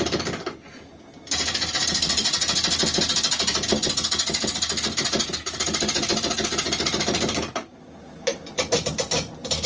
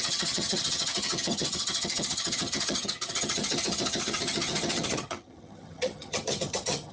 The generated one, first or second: second